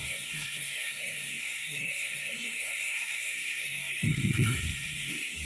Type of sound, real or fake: fake